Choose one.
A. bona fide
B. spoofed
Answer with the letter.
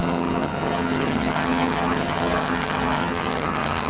B